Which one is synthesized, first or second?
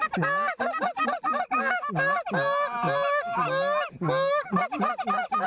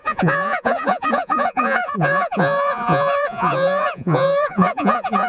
second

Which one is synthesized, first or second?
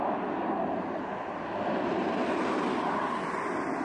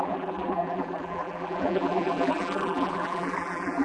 second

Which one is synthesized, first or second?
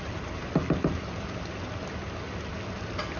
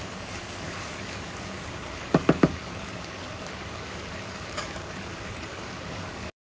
second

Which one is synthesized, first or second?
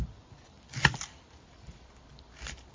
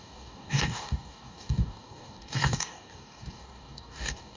second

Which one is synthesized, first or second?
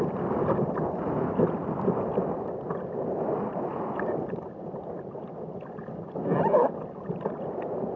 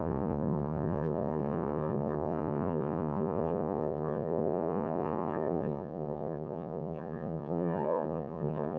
second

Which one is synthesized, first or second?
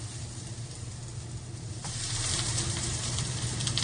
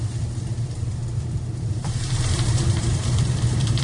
second